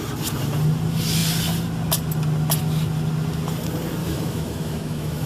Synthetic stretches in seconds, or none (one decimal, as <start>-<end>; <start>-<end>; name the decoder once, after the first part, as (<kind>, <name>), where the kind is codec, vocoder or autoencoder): 4.0-5.3 (autoencoder, DAC-VAE)